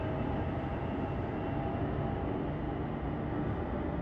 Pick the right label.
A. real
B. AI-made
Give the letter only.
A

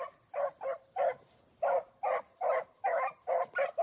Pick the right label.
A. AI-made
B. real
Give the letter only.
B